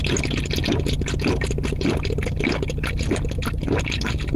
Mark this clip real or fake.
real